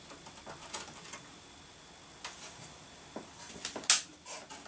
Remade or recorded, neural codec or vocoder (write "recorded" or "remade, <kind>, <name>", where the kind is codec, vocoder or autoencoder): recorded